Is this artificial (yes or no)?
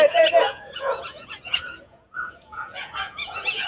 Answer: yes